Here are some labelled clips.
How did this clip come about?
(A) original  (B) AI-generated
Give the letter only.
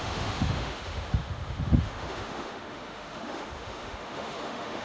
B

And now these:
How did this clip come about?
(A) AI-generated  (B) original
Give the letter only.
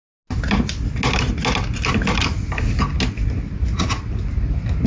B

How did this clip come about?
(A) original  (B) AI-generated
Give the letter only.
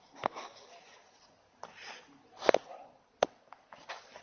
A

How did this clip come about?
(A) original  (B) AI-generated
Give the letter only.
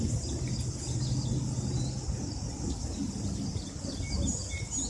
A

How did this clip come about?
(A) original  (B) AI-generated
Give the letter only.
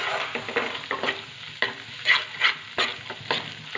A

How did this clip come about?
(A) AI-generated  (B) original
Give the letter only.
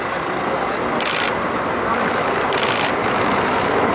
B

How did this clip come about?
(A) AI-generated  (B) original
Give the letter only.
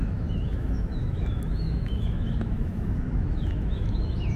A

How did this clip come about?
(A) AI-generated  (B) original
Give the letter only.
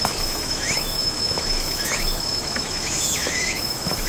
A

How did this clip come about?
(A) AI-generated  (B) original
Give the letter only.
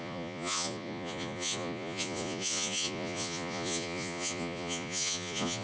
A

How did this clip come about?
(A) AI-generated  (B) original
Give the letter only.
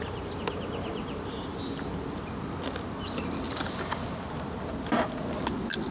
B